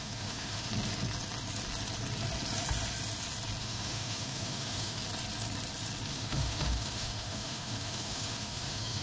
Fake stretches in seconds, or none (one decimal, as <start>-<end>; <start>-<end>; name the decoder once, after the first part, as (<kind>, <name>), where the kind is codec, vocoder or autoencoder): 0.0-0.7 (autoencoder, DAC-VAE); 3.6-5.0; 6.1-9.0